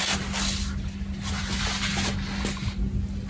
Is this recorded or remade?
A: recorded